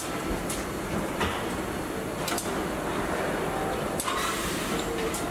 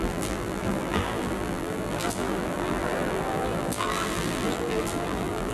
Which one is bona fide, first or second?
first